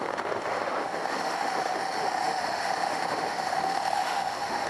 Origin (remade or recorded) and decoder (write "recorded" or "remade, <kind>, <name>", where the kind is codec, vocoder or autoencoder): remade, autoencoder, DAC-VAE